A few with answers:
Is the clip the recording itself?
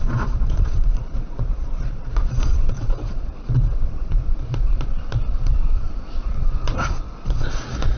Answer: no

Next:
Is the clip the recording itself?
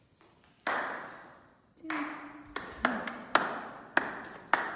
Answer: yes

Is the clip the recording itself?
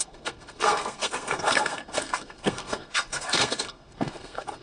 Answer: no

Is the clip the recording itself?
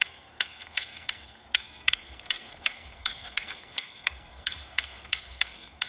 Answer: no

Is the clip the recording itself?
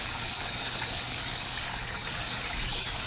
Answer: no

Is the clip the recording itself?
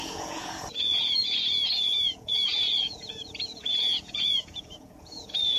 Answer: no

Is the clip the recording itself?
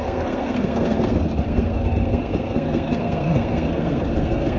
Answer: no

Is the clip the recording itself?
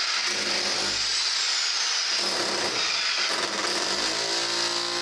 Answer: yes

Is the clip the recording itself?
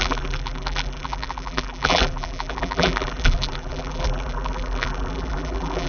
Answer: no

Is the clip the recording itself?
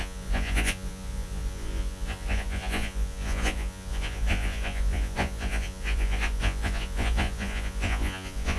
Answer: no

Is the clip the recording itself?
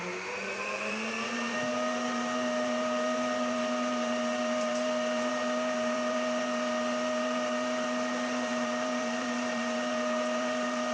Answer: no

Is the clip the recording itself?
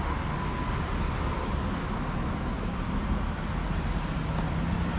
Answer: yes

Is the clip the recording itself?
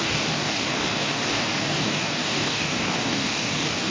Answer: no